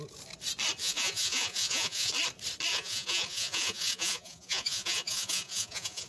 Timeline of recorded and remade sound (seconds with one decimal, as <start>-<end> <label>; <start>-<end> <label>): 0.0-0.8 recorded; 0.8-2.1 remade; 2.1-2.7 recorded; 2.7-6.1 remade